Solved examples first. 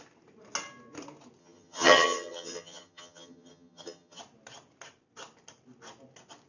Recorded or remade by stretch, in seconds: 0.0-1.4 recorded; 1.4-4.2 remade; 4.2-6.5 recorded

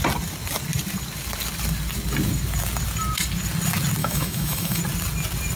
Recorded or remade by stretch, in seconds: 0.0-4.0 recorded; 4.0-4.8 remade; 4.8-5.6 recorded